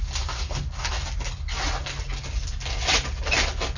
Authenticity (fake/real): real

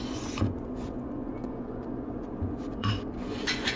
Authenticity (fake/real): fake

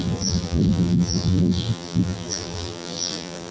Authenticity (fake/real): fake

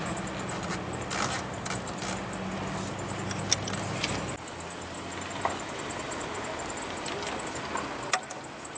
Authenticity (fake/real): real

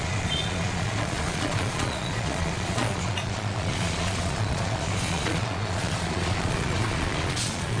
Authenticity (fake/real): fake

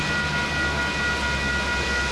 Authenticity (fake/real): real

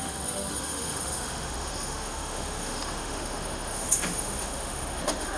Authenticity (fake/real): fake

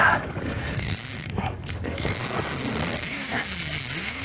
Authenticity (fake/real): fake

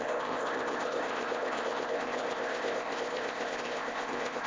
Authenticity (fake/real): fake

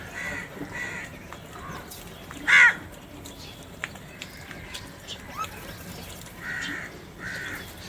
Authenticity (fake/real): real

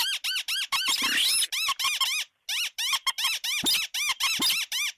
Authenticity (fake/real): real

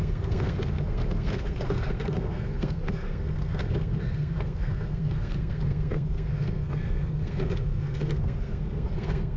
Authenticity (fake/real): fake